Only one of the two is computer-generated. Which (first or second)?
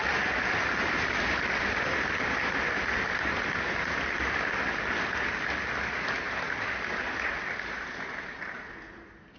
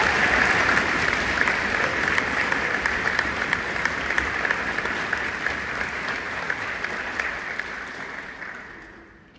second